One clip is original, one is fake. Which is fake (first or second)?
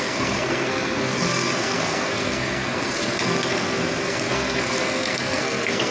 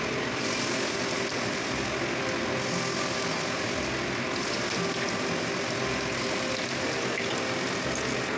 first